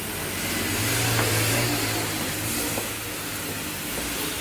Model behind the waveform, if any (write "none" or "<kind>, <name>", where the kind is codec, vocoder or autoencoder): none